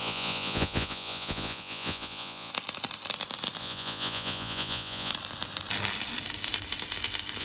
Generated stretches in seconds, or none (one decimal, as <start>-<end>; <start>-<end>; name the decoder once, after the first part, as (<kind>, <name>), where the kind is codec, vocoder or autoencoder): 0.0-2.5 (vocoder, Vocos); 3.6-5.1